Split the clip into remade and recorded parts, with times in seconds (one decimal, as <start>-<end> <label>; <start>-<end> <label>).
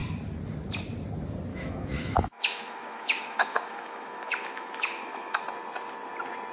0.0-1.5 recorded; 1.5-5.4 remade; 5.4-6.5 recorded